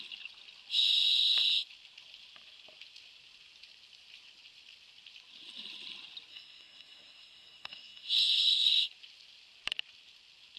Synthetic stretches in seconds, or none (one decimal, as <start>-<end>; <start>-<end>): 6.3-8.8